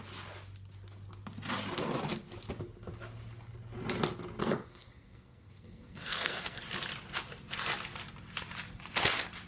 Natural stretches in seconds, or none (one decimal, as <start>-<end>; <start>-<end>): 0.0-4.4; 6.6-9.5